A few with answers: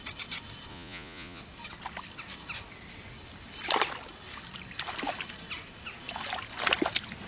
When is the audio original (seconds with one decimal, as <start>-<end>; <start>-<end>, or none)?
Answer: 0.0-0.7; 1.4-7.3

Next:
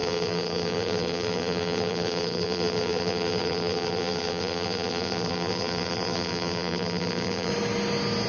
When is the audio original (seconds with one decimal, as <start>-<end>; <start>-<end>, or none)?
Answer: 7.5-8.3

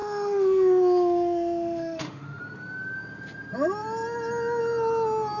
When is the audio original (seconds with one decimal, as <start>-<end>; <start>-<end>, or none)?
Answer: 2.4-5.4